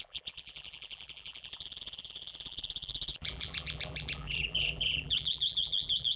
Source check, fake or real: fake